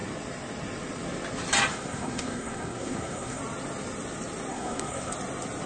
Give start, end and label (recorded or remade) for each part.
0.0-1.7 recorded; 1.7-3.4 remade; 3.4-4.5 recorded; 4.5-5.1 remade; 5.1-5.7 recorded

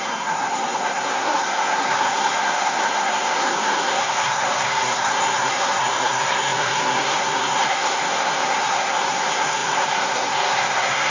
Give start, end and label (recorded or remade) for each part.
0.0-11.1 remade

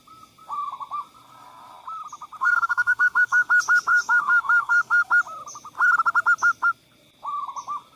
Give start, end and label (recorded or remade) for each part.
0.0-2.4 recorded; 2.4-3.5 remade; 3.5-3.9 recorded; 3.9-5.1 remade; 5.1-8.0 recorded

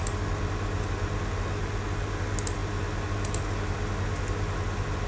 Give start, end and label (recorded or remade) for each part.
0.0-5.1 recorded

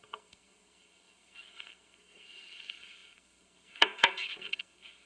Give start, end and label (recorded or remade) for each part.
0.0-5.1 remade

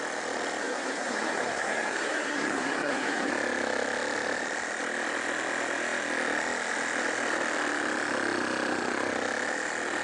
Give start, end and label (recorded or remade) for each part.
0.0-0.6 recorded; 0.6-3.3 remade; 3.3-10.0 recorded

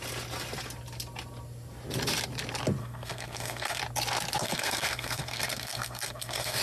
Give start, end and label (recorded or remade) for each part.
0.0-2.8 recorded; 2.8-3.8 remade; 3.8-4.4 recorded; 4.4-6.6 remade